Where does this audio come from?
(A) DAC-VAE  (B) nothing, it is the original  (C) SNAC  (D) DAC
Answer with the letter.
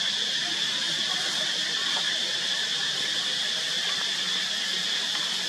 B